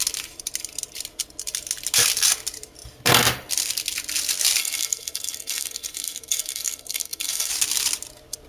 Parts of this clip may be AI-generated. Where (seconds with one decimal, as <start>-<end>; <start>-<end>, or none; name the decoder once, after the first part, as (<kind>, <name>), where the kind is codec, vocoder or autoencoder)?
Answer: 4.6-7.5 (codec, SNAC)